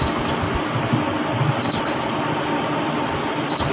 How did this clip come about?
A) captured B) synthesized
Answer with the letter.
A